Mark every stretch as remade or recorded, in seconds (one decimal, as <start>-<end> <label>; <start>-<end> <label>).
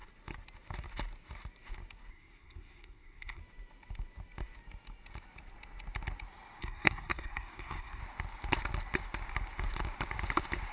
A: 0.0-2.1 recorded; 2.1-3.4 remade; 3.4-6.6 recorded; 6.6-8.0 remade; 8.0-10.7 recorded